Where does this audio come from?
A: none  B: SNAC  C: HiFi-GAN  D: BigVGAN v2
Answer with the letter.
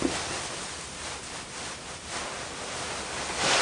A